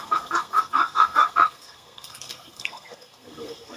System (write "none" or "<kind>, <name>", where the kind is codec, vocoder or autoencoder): codec, SNAC